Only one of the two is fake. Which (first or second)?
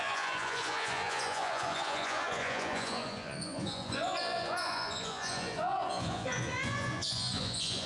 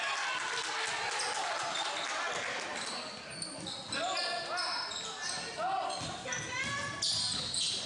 first